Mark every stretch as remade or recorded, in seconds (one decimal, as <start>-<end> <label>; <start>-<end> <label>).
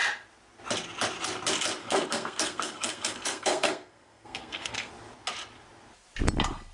0.0-1.8 recorded; 1.8-4.9 remade; 4.9-6.7 recorded